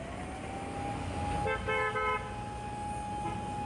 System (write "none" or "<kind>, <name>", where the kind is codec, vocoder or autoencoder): none